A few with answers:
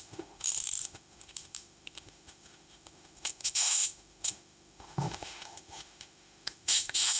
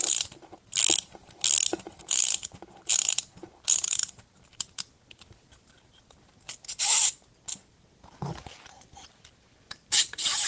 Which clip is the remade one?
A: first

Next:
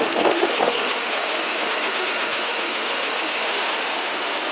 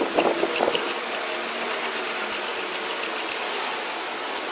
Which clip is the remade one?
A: first